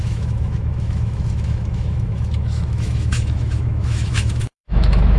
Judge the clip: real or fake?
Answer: fake